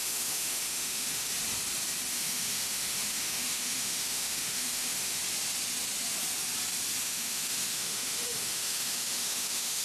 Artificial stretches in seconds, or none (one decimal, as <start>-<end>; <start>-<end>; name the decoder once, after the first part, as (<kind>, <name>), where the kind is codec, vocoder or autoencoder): 0.0-1.3 (autoencoder, DAC-VAE); 2.1-5.2; 7.0-9.8